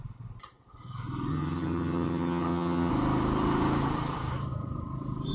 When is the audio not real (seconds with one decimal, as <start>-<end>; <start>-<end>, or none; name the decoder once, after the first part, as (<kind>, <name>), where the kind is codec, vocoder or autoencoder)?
1.3-2.9 (vocoder, HiFi-GAN)